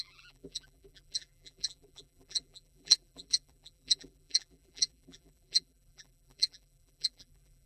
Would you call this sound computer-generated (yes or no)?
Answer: yes